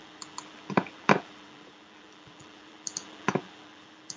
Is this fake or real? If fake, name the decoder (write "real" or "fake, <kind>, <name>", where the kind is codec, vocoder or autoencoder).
fake, vocoder, BigVGAN v2